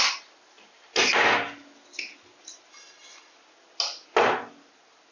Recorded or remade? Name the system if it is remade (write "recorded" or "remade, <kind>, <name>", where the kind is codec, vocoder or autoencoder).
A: recorded